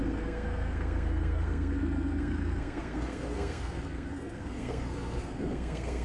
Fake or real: fake